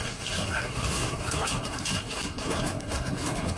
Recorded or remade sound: remade